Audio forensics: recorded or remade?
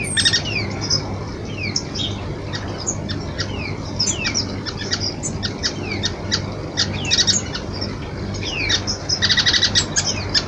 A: recorded